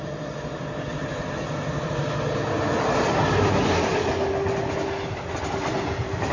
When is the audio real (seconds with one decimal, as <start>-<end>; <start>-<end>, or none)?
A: 2.0-2.6; 3.9-5.6